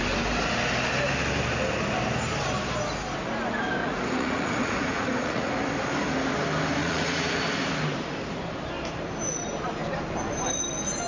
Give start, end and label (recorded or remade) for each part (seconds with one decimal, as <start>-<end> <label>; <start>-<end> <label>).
0.0-3.8 recorded; 3.8-5.5 remade; 5.5-6.8 recorded; 6.8-7.4 remade; 7.4-11.1 recorded